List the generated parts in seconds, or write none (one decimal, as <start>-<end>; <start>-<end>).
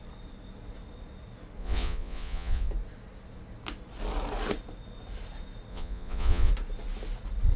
1.6-2.7; 5.7-6.5